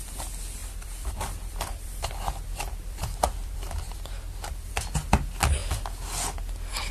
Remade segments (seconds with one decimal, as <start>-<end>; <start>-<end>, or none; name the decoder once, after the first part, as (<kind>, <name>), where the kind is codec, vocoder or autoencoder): 0.6-4.7 (vocoder, BigVGAN v2)